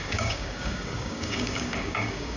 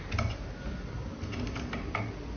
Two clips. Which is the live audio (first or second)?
second